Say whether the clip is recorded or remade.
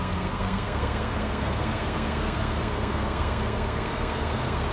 remade